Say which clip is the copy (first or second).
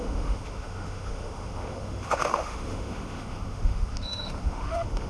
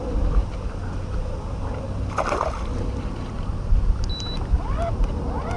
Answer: first